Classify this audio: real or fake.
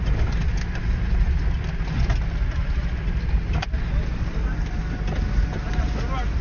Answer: real